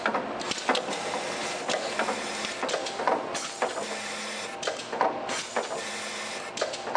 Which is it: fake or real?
real